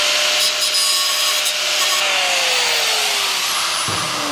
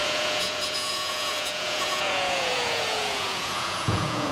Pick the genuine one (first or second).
first